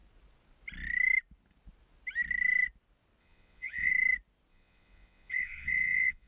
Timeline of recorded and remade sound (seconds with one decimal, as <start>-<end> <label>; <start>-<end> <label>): 0.0-3.2 recorded; 3.2-3.9 remade; 3.9-4.5 recorded; 4.5-6.3 remade